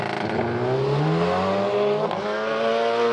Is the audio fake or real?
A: real